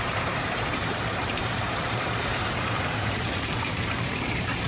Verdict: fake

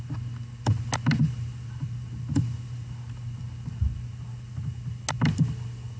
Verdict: real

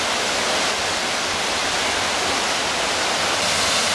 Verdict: real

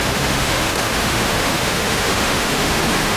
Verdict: fake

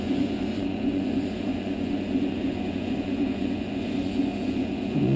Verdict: fake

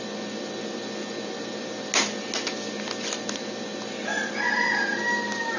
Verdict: real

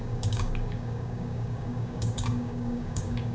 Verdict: fake